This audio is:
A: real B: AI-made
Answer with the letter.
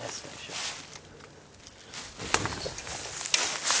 A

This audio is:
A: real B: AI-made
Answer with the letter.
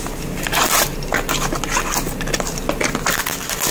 A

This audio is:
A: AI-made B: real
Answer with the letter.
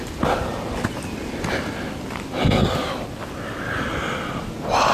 B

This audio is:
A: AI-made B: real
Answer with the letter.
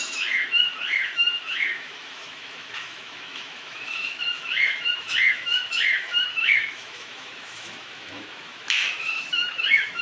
A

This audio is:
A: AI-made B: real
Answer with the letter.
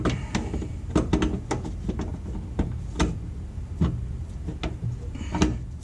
B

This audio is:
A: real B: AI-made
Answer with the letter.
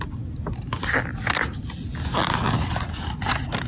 A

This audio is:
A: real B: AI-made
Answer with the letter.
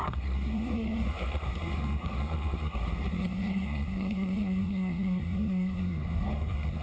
B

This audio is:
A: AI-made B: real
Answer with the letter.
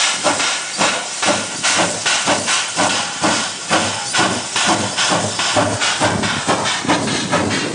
B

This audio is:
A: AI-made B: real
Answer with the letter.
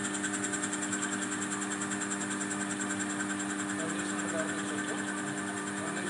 B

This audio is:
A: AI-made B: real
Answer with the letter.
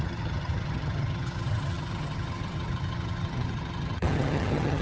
A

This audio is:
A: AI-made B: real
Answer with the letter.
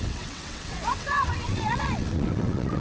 A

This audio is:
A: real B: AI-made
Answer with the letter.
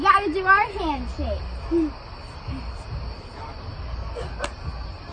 A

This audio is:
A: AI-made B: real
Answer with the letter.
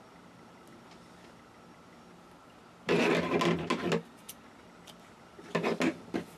B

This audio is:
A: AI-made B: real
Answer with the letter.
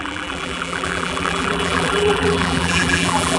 A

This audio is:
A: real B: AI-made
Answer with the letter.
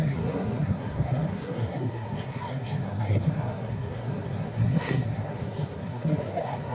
B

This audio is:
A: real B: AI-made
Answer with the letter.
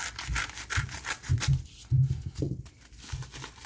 A